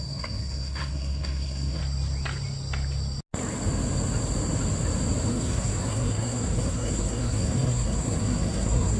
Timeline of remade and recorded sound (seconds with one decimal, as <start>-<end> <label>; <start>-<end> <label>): 0.0-1.8 remade; 1.8-5.3 recorded; 5.3-9.0 remade